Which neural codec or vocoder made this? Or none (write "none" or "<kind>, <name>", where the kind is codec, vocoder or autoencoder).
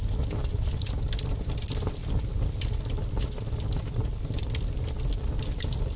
none